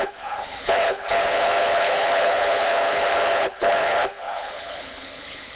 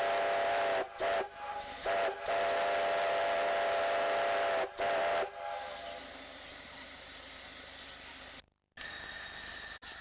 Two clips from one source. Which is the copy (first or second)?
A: first